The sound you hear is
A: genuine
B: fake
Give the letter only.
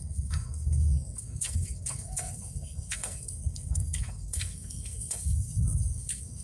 B